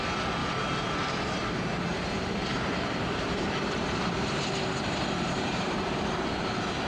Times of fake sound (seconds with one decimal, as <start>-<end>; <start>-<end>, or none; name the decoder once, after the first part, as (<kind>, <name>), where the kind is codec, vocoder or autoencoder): 0.4-1.5 (vocoder, BigVGAN v2); 1.9-6.0

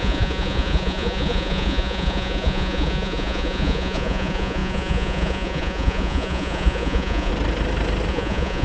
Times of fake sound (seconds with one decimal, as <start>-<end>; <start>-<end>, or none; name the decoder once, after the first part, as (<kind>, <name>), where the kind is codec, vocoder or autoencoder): 0.0-7.3 (vocoder, Vocos); 8.1-8.6

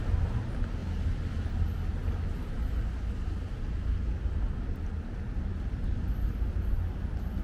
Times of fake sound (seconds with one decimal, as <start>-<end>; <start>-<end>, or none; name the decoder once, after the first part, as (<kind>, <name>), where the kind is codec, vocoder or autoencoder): 0.8-1.5 (vocoder, BigVGAN v2)

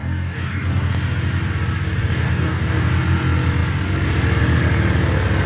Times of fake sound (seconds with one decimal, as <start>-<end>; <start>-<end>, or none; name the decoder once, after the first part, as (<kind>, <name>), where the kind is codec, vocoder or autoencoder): 0.0-0.9 (codec, DAC); 2.0-2.9

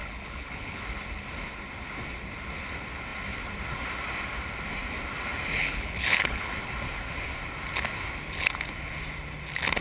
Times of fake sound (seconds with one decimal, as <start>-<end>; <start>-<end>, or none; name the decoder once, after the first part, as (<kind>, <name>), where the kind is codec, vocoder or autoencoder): 0.0-0.8 (codec, HILCodec); 5.6-6.5

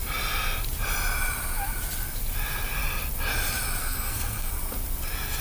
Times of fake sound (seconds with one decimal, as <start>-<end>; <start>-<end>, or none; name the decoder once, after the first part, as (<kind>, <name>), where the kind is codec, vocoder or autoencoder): 3.8-4.5 (codec, SNAC)

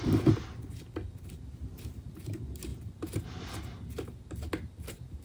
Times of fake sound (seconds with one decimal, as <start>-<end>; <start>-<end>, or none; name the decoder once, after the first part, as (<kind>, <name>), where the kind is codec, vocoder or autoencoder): none